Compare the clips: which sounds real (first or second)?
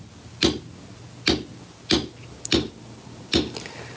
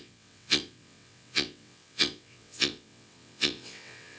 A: first